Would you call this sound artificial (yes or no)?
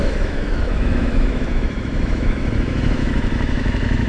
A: yes